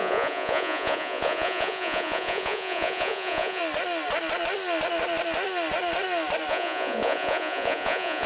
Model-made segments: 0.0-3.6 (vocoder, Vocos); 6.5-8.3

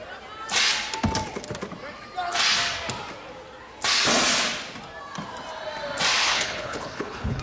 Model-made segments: 6.2-7.4 (codec, HILCodec)

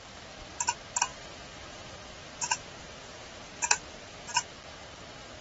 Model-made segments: 1.1-4.3 (vocoder, BigVGAN v2)

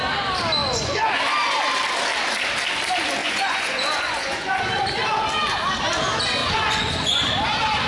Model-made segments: 0.6-1.2 (vocoder, Vocos); 3.2-4.7; 6.4-7.3